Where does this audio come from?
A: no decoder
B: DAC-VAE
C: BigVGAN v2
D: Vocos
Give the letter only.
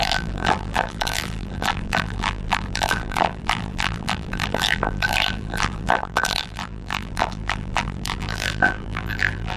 C